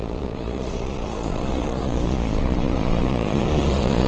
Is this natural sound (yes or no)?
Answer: no